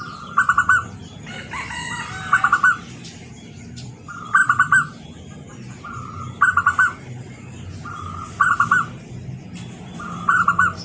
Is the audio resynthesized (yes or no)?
no